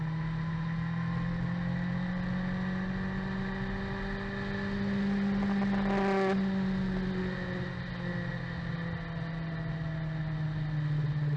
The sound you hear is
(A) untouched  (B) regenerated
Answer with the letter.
A